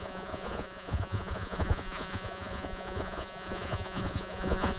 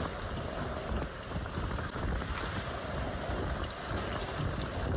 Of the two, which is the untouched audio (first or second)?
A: second